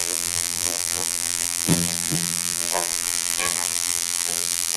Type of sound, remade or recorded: remade